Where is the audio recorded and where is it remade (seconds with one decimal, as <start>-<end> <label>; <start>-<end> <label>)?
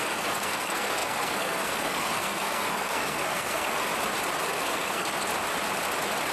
0.0-3.9 remade; 3.9-4.4 recorded; 4.4-5.3 remade; 5.3-6.3 recorded